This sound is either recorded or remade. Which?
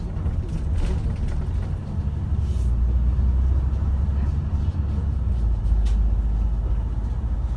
recorded